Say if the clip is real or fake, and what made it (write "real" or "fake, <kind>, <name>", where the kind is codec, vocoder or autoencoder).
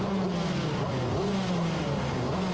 real